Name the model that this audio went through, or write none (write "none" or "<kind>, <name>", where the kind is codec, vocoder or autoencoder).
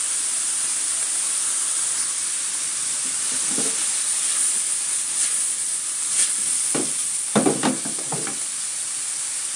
none